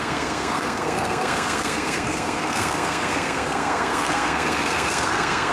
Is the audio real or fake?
fake